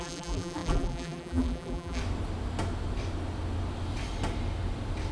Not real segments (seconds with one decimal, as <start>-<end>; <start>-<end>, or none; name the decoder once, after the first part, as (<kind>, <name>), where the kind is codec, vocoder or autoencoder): 0.0-2.0 (vocoder, BigVGAN v2)

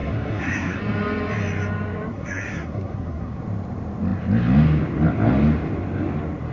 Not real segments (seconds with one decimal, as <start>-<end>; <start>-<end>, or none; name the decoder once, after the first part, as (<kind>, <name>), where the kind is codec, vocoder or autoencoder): 0.0-0.8 (codec, SNAC); 2.1-3.4

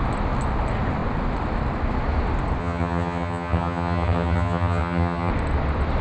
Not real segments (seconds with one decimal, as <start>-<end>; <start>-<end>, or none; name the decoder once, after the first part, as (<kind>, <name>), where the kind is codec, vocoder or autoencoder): 2.6-5.3 (vocoder, HiFi-GAN)

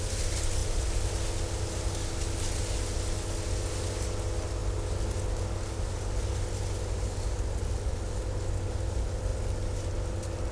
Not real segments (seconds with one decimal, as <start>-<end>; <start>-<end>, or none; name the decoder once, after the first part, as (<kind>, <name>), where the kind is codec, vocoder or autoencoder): none

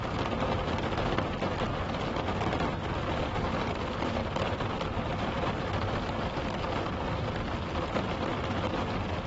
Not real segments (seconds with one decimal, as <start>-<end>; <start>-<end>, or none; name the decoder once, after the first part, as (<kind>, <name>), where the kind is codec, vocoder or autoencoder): none

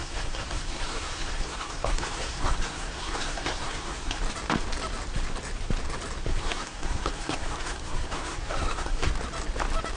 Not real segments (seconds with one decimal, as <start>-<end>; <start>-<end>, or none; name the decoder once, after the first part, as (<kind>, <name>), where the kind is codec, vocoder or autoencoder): 0.0-4.2 (codec, SNAC); 6.3-9.1